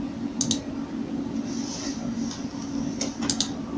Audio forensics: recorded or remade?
recorded